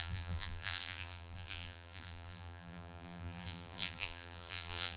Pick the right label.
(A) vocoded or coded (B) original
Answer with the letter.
A